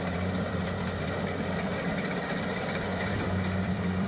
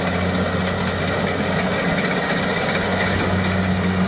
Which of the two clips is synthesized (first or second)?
first